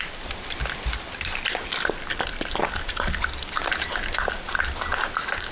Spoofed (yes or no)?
yes